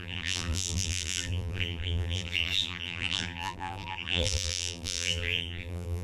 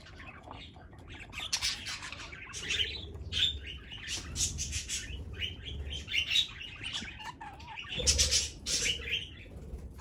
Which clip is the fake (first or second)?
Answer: first